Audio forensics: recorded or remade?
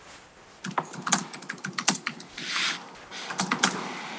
recorded